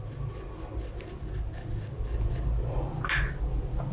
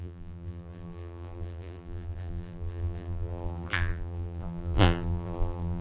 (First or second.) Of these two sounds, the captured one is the first